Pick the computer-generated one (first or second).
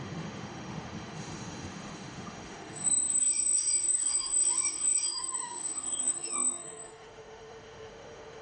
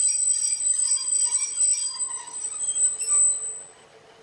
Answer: first